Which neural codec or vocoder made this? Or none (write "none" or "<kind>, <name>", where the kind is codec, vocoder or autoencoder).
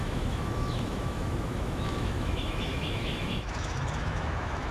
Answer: autoencoder, DAC-VAE